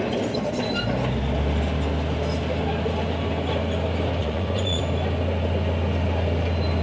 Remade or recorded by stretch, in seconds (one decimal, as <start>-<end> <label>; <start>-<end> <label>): 0.0-4.2 recorded; 4.2-4.8 remade; 4.8-6.8 recorded